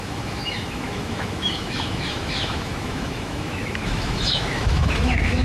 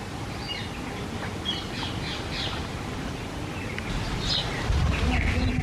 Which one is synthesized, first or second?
first